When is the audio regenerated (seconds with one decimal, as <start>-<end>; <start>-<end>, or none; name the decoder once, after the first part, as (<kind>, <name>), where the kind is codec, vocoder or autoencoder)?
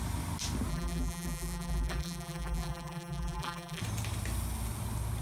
0.7-3.8 (vocoder, BigVGAN v2)